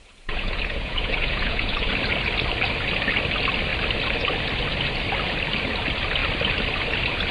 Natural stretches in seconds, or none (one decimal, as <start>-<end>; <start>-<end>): 1.9-7.3